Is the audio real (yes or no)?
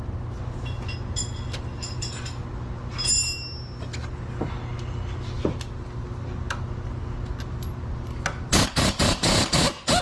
yes